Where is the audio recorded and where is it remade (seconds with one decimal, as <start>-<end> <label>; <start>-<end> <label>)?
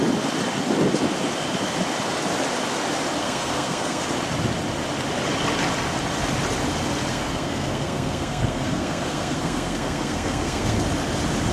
0.0-3.2 recorded; 3.2-4.0 remade; 4.0-7.1 recorded; 7.1-10.8 remade; 10.8-11.5 recorded